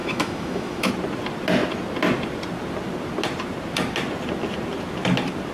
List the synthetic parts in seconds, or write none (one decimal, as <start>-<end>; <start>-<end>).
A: 0.0-0.9